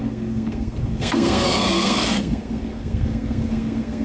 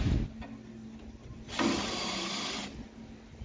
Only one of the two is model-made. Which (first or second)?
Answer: first